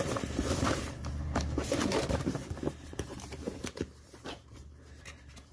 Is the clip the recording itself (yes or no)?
no